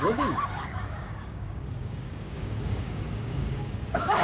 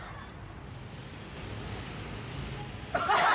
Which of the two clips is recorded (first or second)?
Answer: second